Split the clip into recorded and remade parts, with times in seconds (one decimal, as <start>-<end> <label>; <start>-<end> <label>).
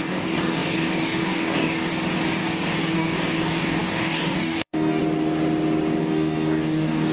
0.0-1.9 remade; 1.9-2.4 recorded; 2.4-5.0 remade; 5.0-6.0 recorded; 6.0-7.1 remade